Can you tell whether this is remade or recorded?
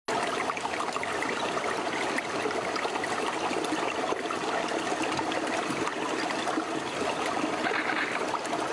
recorded